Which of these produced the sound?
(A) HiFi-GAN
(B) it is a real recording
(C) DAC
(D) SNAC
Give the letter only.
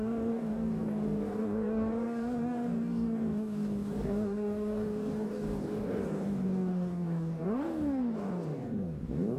C